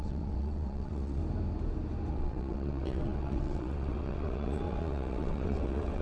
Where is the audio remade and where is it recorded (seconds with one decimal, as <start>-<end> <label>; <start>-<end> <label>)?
0.0-1.2 remade; 1.2-2.1 recorded; 2.1-6.0 remade